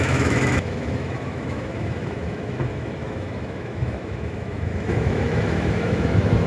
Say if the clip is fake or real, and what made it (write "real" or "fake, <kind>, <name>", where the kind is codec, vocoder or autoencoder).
fake, autoencoder, DAC-VAE